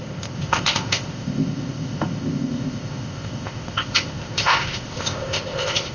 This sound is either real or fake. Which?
fake